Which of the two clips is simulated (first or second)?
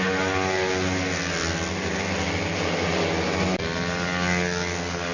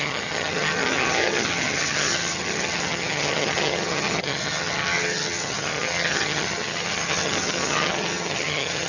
second